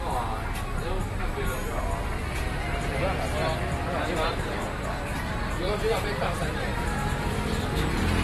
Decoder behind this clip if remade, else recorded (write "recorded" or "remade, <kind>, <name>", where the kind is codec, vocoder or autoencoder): recorded